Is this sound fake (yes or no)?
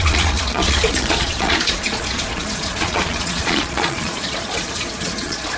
yes